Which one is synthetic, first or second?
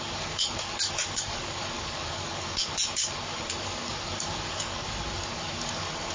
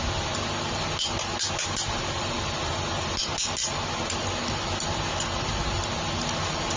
first